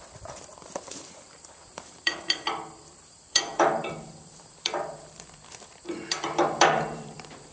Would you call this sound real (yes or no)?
no